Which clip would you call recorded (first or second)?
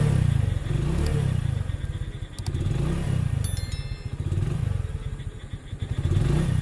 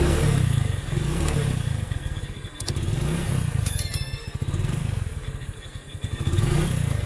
first